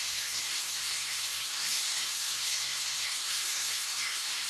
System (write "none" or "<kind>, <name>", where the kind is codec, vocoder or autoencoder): codec, SNAC